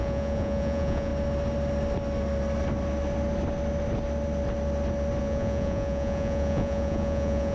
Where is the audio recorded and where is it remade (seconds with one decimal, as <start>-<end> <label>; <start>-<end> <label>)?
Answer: 0.0-1.1 remade; 1.1-5.2 recorded; 5.2-7.5 remade